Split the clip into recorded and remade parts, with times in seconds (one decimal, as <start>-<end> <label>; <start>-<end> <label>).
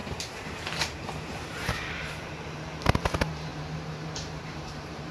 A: 0.0-5.1 remade